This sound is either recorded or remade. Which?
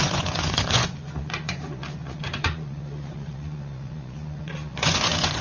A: remade